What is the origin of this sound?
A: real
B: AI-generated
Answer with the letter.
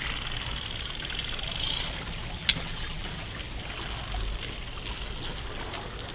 A